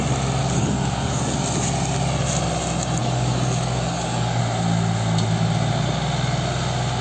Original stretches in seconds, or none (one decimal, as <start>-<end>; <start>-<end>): 0.0-0.4; 1.4-3.0; 4.4-7.0